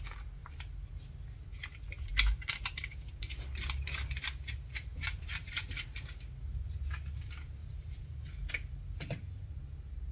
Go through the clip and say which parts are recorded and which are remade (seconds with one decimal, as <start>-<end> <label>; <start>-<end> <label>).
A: 0.0-0.4 recorded; 0.4-0.9 remade; 0.9-1.5 recorded; 1.5-6.3 remade; 6.3-7.6 recorded; 7.6-8.5 remade; 8.5-10.1 recorded